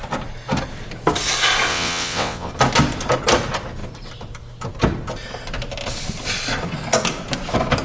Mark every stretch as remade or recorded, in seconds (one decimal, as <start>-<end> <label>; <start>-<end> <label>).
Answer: 0.0-1.7 recorded; 1.7-2.5 remade; 2.5-7.8 recorded